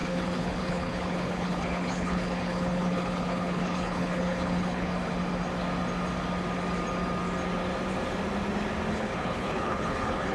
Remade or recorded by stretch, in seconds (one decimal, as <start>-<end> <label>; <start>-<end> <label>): 0.0-4.9 remade; 4.9-8.9 recorded; 8.9-10.3 remade